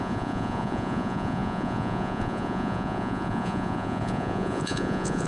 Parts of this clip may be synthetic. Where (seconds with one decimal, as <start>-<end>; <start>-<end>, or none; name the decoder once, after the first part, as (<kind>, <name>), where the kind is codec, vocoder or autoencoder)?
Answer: 0.0-5.3 (vocoder, Vocos)